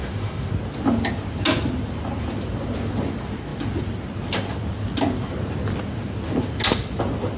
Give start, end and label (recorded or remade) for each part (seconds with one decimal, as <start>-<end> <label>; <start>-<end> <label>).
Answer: 0.0-0.5 remade; 0.5-7.4 recorded